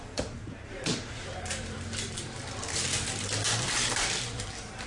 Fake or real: fake